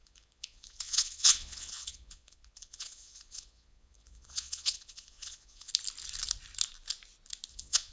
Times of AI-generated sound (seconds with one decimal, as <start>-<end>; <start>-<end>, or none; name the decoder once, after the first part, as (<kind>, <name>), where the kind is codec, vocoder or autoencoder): 0.0-5.7 (vocoder, Vocos); 7.5-7.9